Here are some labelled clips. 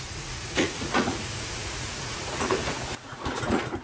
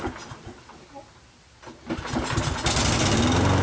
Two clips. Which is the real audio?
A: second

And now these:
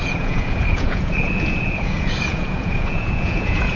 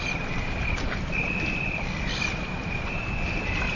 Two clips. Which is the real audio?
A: second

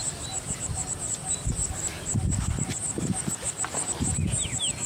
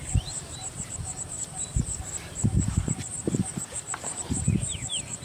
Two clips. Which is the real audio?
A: first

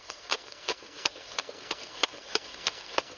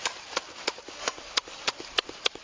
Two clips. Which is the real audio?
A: second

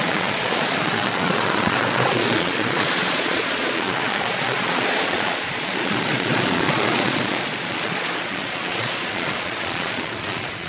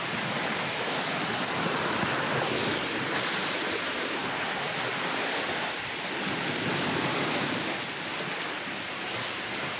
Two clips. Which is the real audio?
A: second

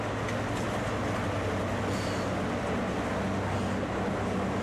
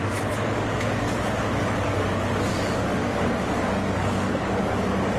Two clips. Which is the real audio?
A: first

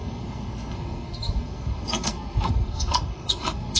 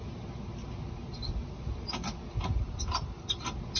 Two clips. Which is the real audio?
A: second